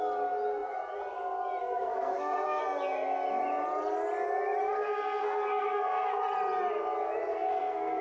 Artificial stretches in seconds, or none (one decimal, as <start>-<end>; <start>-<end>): 1.6-2.6; 4.6-6.2; 7.3-8.0